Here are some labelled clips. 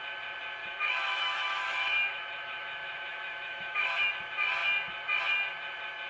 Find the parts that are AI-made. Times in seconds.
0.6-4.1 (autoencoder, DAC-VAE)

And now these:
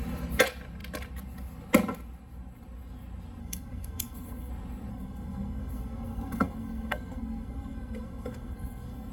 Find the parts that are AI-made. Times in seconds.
3.4-4.5 (codec, SNAC); 4.9-9.1

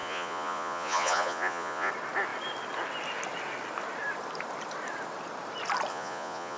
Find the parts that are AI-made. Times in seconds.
0.0-1.9 (vocoder, Vocos); 5.9-6.6